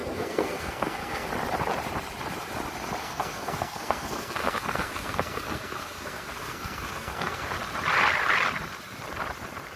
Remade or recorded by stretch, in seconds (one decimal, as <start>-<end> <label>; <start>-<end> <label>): 0.0-1.3 remade; 1.3-3.0 recorded; 3.0-7.5 remade; 7.5-9.8 recorded